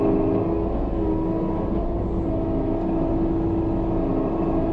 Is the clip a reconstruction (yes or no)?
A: no